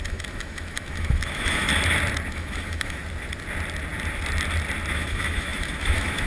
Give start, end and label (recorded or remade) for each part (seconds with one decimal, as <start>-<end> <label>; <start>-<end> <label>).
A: 0.0-1.7 remade; 1.7-2.3 recorded; 2.3-3.0 remade; 3.0-4.9 recorded; 4.9-6.3 remade